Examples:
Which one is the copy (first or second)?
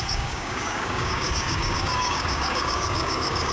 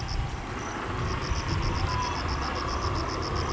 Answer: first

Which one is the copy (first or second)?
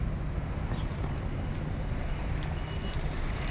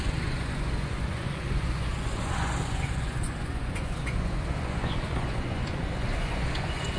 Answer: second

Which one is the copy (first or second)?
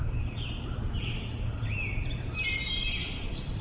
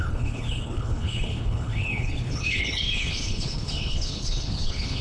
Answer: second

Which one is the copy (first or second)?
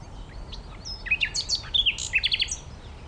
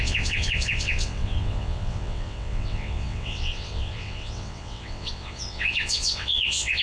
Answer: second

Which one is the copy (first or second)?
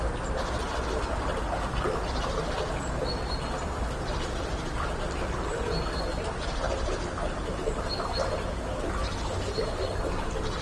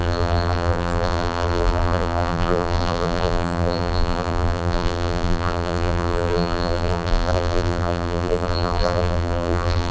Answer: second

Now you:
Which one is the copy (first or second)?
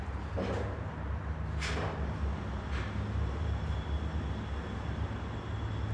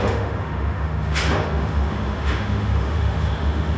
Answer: second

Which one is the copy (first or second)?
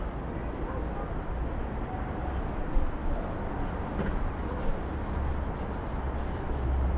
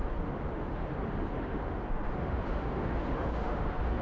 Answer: second